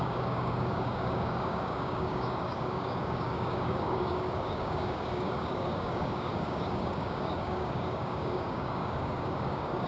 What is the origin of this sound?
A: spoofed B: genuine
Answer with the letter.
A